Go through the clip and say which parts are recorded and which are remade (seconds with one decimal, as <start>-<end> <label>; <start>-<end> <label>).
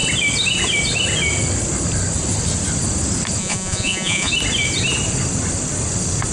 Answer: 0.0-3.4 recorded; 3.4-4.3 remade; 4.3-6.3 recorded